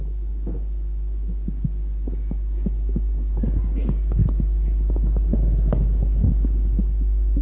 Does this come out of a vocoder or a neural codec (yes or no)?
no